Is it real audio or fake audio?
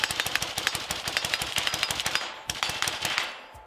fake